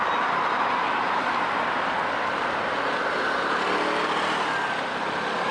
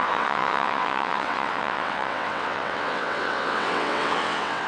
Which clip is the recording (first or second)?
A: first